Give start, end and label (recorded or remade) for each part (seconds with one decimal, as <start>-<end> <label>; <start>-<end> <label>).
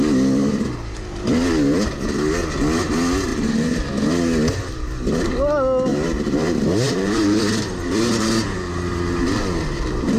0.0-3.3 recorded; 3.3-3.9 remade; 3.9-5.9 recorded; 5.9-10.2 remade